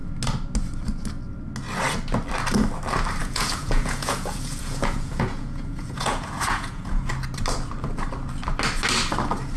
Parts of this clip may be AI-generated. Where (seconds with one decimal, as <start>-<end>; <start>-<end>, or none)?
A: 3.2-7.1